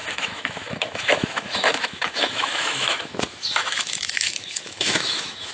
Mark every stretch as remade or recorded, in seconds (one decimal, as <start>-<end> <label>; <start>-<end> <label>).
0.0-5.5 remade